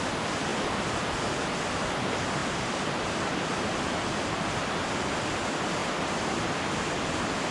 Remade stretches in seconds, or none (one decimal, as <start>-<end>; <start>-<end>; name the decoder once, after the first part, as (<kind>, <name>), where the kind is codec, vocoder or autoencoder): none